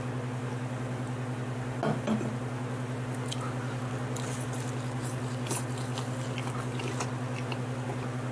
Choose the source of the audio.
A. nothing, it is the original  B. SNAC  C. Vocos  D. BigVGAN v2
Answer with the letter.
A